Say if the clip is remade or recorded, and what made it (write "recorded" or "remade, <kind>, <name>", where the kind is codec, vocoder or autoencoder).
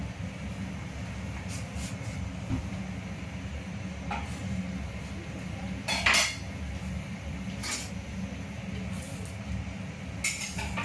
recorded